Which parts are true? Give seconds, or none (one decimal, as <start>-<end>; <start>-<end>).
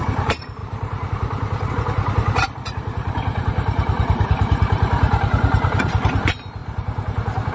none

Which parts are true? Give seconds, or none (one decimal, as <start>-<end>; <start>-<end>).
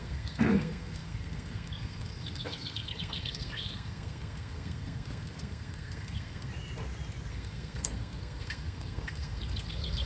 6.5-7.3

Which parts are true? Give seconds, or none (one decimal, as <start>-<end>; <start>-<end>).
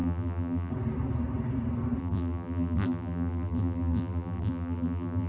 0.7-2.0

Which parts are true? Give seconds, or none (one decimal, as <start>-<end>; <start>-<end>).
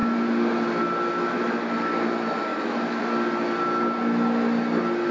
0.0-2.5; 3.0-5.1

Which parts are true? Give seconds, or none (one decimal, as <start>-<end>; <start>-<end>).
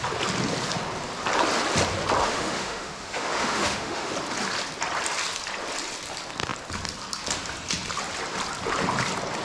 0.0-2.2; 4.1-9.4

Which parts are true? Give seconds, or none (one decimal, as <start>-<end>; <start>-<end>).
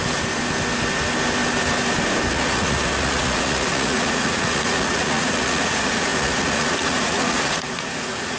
0.0-2.3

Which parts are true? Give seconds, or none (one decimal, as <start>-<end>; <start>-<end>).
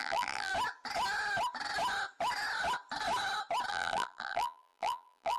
0.5-3.7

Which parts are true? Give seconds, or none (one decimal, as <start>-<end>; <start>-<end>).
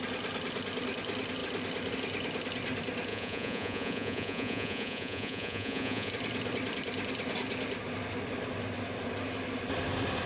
0.0-3.1; 6.1-10.3